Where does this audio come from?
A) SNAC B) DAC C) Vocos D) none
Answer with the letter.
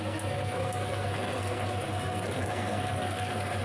A